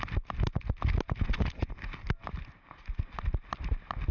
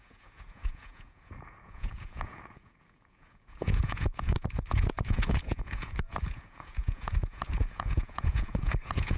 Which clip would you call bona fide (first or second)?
first